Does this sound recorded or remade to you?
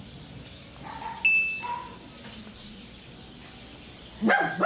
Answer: recorded